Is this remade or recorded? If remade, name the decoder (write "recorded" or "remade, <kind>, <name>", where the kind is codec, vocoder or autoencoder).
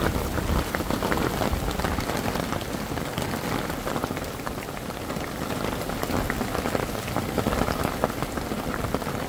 recorded